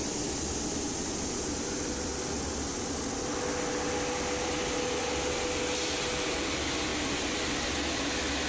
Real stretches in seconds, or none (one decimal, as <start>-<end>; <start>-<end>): 0.0-8.5